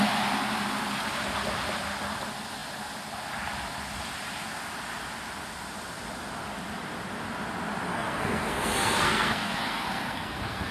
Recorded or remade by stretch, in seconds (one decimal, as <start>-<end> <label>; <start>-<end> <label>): 0.0-7.9 recorded; 7.9-10.7 remade